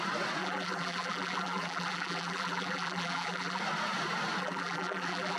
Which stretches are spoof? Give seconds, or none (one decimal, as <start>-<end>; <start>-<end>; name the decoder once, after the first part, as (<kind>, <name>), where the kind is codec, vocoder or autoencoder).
0.4-3.6 (vocoder, BigVGAN v2); 4.4-5.4